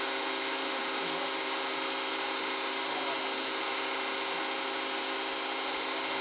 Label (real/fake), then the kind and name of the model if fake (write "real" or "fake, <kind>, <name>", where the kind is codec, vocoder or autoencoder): real